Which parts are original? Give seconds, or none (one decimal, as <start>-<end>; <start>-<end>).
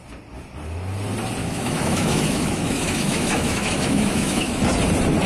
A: 0.0-1.4; 4.6-5.3